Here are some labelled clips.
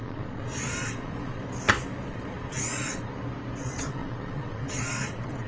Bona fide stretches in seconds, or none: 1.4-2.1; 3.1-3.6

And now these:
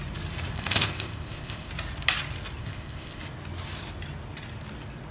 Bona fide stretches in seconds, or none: 0.0-0.5; 1.7-2.6; 3.2-5.1